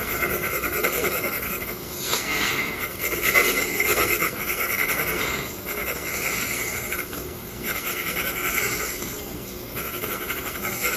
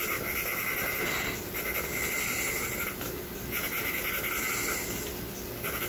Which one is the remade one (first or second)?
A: first